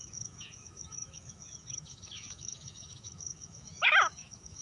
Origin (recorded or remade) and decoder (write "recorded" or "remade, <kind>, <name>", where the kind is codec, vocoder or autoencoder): remade, autoencoder, DAC-VAE